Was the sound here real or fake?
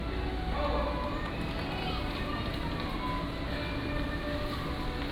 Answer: real